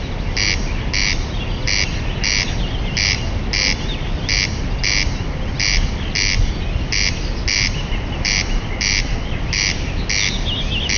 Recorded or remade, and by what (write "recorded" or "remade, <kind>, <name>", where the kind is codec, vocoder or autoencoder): recorded